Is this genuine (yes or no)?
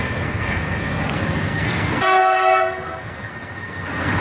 no